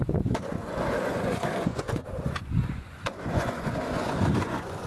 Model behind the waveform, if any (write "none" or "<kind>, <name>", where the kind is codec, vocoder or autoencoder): vocoder, Vocos